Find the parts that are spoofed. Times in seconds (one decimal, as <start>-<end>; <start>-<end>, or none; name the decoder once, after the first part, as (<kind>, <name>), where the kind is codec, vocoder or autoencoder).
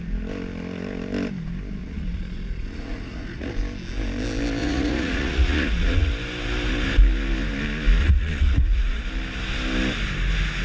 1.8-3.5 (vocoder, Vocos); 4.6-6.1; 8.0-9.0